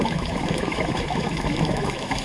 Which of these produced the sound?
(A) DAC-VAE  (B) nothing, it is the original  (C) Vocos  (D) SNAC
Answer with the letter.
A